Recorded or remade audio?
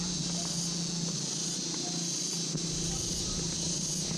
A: recorded